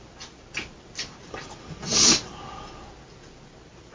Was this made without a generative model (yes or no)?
yes